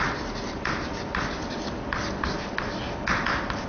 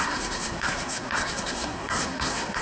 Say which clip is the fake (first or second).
second